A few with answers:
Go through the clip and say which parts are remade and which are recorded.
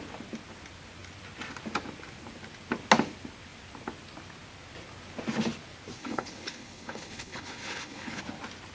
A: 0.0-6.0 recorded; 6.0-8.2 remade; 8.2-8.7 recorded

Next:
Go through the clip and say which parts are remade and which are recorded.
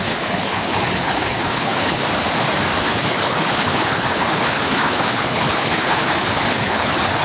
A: 0.0-2.0 remade; 2.0-2.8 recorded; 2.8-7.2 remade